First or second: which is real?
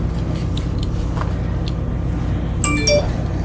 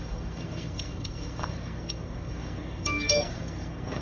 first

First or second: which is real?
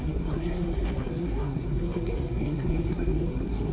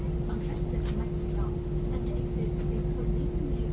second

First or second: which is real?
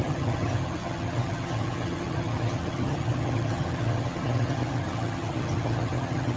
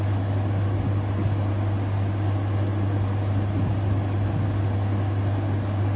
second